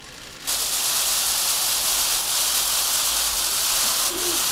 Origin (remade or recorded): recorded